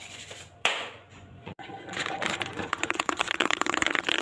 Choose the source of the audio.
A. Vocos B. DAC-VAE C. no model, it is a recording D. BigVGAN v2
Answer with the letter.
A